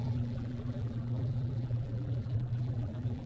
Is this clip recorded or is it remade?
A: remade